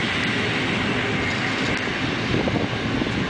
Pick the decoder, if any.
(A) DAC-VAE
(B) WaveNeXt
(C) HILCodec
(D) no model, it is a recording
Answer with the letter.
D